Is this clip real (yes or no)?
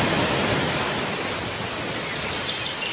yes